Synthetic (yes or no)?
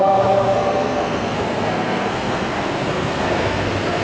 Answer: yes